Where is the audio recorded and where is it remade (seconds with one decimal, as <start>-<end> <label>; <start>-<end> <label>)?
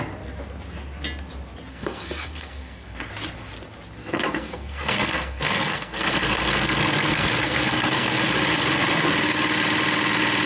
0.0-1.7 recorded; 1.7-3.1 remade; 3.1-4.0 recorded; 4.0-8.2 remade; 8.2-10.5 recorded